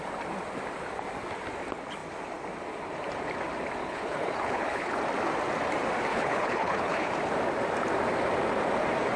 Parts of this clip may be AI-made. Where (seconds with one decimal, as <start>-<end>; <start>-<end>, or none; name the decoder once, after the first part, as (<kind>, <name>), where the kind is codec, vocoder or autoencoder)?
3.8-5.0 (codec, HILCodec); 6.1-7.1